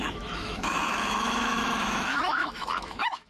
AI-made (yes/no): yes